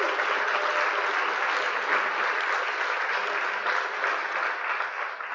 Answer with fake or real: real